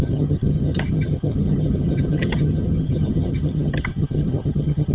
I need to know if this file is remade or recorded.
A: remade